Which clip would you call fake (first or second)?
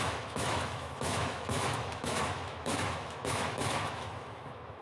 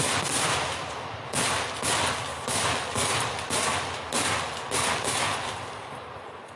first